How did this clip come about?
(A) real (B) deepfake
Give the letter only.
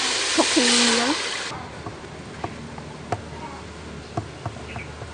A